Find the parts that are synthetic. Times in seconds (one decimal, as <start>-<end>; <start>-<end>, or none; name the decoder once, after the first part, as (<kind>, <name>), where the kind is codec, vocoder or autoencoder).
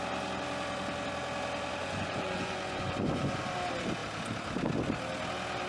1.8-3.5 (vocoder, Vocos)